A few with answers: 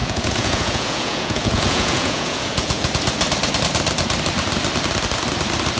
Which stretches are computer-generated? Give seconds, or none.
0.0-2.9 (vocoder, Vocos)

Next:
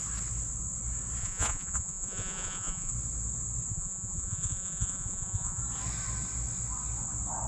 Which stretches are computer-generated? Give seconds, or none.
1.2-2.9 (vocoder, Vocos); 3.7-5.6

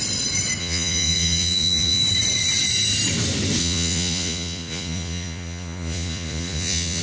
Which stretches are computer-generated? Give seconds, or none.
0.6-2.0 (vocoder, Vocos); 3.6-7.0